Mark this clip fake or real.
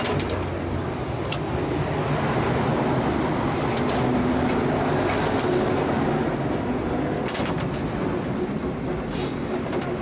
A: real